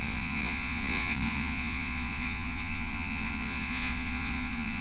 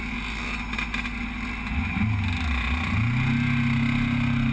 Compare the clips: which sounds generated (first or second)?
first